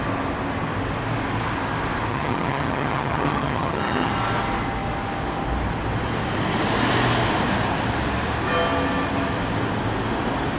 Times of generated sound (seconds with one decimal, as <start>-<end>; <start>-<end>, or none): 2.1-4.1

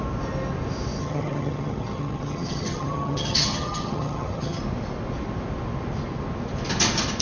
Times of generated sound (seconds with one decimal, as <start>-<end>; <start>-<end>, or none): 1.0-4.6

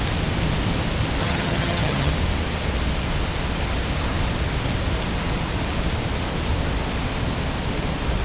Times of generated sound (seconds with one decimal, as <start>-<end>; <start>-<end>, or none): 1.2-2.1

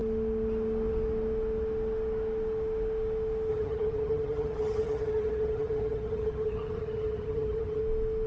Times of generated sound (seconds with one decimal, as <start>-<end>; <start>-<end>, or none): 3.5-7.8

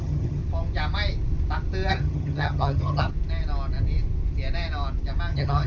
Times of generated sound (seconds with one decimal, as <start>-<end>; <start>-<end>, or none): 0.0-0.4; 1.9-3.1; 5.3-5.7

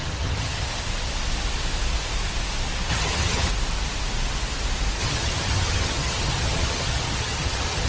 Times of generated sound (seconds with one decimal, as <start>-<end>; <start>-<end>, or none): 0.0-0.8; 2.9-3.5; 5.0-7.9

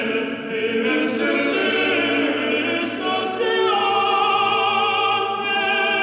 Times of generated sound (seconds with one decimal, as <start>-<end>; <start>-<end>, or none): none